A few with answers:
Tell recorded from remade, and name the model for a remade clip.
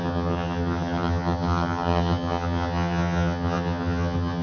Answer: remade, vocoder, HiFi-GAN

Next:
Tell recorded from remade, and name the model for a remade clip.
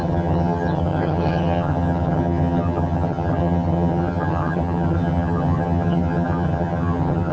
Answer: remade, vocoder, HiFi-GAN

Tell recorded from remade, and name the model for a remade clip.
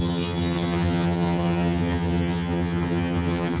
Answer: remade, vocoder, HiFi-GAN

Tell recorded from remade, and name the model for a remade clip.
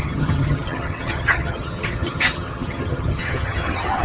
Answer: remade, vocoder, HiFi-GAN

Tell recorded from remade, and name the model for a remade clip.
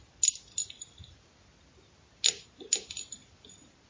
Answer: recorded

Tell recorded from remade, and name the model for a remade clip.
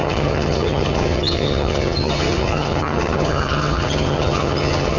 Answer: remade, vocoder, HiFi-GAN